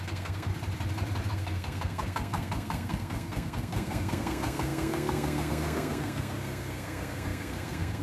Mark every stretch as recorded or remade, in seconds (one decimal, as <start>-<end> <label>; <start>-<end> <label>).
0.0-0.5 remade; 0.5-1.3 recorded; 1.3-8.0 remade

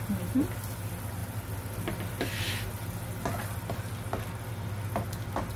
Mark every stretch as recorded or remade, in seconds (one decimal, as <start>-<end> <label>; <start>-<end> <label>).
0.0-5.6 recorded

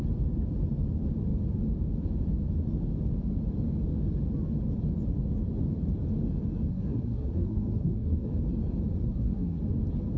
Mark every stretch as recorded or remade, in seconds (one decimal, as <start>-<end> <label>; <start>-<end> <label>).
0.0-6.7 recorded; 6.7-8.3 remade; 8.3-9.0 recorded; 9.0-9.6 remade; 9.6-10.2 recorded

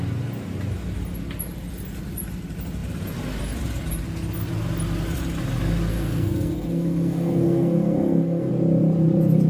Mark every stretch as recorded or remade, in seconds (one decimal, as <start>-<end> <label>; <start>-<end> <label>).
0.0-5.9 recorded; 5.9-8.5 remade; 8.5-9.5 recorded

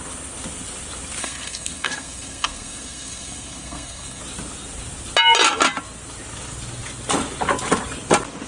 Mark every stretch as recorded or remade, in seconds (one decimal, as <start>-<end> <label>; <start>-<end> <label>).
0.0-1.2 recorded; 1.2-4.2 remade; 4.2-8.5 recorded

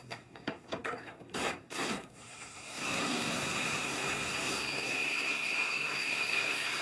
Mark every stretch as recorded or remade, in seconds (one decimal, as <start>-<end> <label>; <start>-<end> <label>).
0.0-6.8 remade

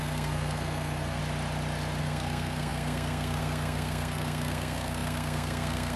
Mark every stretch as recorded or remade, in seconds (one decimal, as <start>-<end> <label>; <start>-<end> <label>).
0.0-1.2 remade; 1.2-2.0 recorded; 2.0-6.0 remade

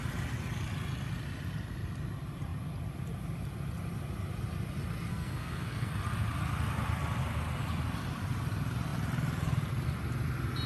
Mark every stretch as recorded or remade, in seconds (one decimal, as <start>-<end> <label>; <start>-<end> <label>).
0.0-5.1 recorded; 5.1-5.9 remade; 5.9-10.7 recorded